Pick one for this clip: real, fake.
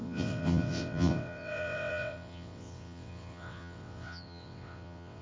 fake